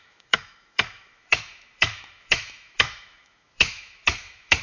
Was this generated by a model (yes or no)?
yes